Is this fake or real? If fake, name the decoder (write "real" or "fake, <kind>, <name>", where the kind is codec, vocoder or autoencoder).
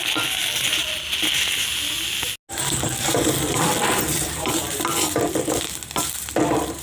real